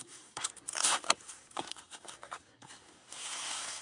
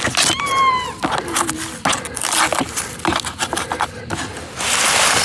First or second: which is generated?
first